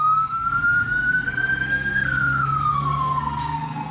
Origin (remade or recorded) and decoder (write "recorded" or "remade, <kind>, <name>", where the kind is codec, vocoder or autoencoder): remade, codec, SNAC